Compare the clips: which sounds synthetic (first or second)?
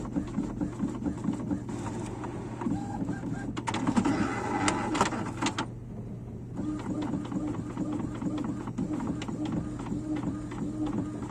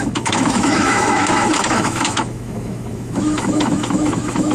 second